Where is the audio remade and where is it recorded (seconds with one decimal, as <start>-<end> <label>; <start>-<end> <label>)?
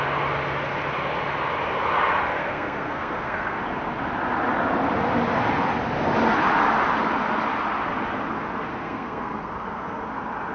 0.0-2.4 recorded; 2.4-3.6 remade; 3.6-8.7 recorded; 8.7-10.0 remade; 10.0-10.5 recorded